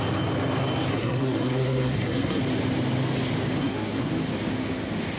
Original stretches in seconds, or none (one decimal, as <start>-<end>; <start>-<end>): 0.0-0.9; 2.4-3.6; 4.1-5.2